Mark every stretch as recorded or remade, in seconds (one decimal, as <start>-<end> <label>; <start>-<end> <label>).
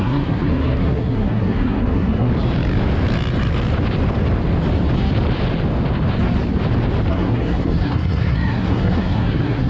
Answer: 0.0-2.3 remade; 2.3-7.1 recorded; 7.1-9.7 remade